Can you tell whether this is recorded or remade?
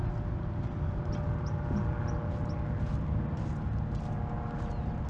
recorded